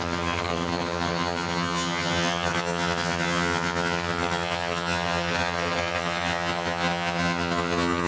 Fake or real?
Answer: fake